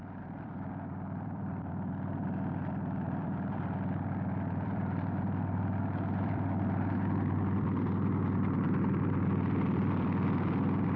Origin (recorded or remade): remade